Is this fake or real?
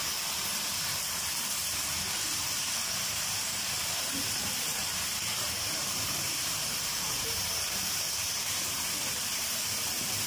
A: fake